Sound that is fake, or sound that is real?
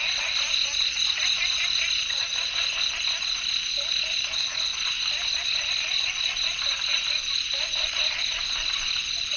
real